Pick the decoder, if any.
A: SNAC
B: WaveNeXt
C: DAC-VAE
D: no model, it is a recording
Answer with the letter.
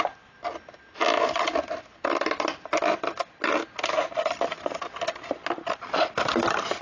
D